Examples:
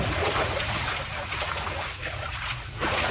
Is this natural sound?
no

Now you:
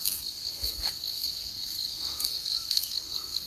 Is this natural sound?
no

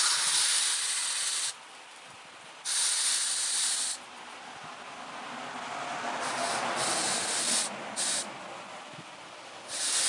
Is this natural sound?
yes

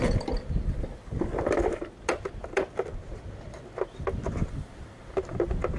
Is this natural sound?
yes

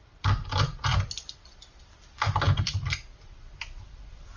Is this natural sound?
yes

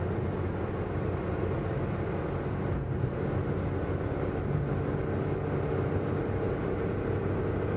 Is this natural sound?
yes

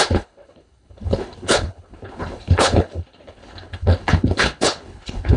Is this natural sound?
no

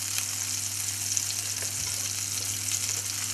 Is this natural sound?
yes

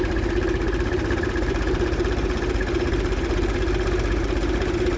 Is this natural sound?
no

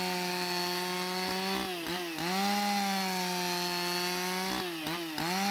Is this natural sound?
yes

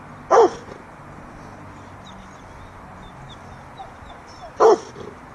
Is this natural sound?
yes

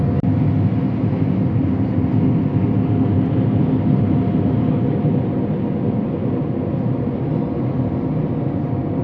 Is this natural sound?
yes